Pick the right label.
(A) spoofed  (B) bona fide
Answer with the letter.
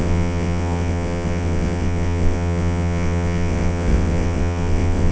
A